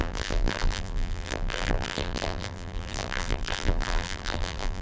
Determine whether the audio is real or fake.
fake